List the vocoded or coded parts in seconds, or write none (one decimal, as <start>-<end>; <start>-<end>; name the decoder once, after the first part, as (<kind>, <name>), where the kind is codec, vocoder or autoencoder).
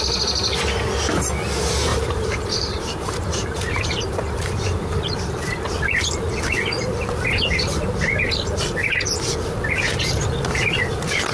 1.9-5.0 (vocoder, BigVGAN v2)